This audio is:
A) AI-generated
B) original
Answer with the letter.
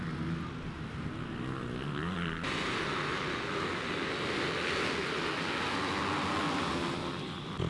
B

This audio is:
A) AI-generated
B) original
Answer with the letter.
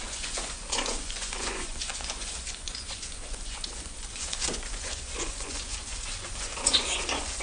A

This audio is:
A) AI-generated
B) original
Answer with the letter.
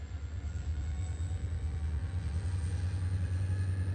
A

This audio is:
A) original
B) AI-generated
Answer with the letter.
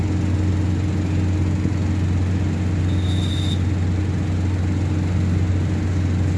A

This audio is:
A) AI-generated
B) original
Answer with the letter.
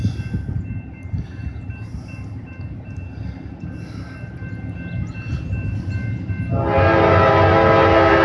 B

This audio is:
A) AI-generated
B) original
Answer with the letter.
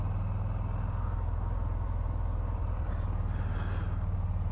B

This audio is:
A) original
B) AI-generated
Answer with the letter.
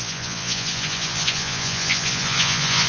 B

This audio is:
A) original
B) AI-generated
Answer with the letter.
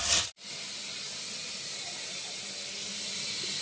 A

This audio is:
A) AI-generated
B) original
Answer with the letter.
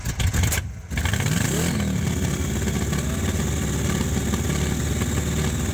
B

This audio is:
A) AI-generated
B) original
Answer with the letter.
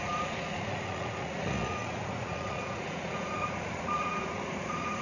A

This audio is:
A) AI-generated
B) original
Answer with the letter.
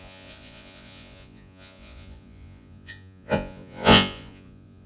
A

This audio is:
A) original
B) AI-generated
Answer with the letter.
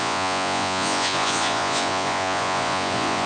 B